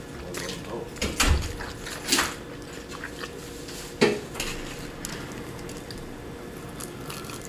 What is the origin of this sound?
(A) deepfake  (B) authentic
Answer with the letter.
B